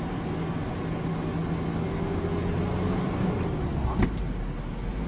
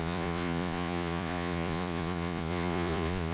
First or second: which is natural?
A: first